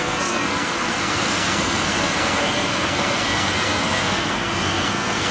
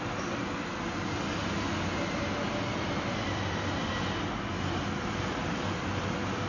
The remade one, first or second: first